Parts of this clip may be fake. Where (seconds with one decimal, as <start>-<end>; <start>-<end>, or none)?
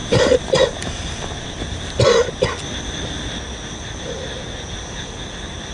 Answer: 0.0-2.0